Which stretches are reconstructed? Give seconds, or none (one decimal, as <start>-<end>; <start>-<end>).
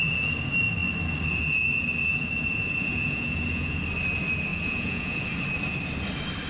2.1-3.8; 4.5-5.2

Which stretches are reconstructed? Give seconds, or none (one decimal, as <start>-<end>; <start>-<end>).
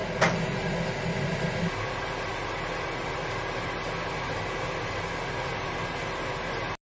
none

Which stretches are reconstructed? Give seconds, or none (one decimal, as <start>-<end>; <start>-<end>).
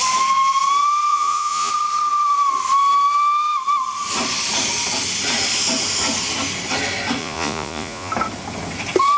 1.1-1.7; 7.2-8.1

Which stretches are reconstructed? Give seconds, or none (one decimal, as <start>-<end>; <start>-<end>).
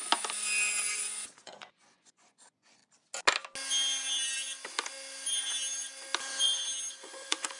0.9-2.8; 6.9-7.6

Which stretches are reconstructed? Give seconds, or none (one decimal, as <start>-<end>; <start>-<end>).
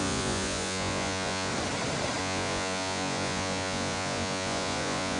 0.0-1.5; 2.2-5.2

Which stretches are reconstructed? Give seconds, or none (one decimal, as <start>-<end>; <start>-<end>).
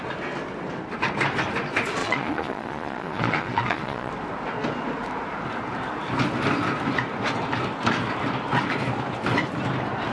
2.0-4.1